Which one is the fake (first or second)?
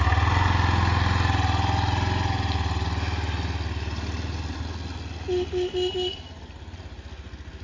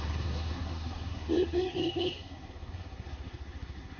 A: second